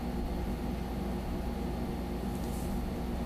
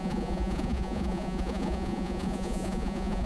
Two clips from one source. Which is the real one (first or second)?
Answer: first